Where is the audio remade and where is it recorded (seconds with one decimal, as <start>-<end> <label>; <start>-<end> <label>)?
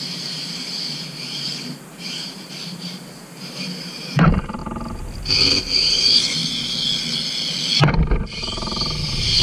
0.0-4.6 remade; 4.6-5.6 recorded; 5.6-6.4 remade; 6.4-8.1 recorded; 8.1-9.4 remade